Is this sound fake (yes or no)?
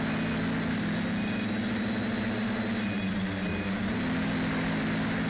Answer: no